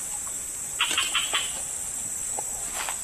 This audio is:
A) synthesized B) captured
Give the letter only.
B